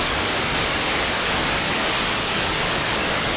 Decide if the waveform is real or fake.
fake